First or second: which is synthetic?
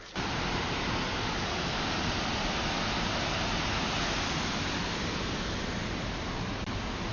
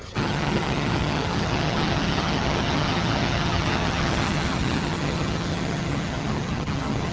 second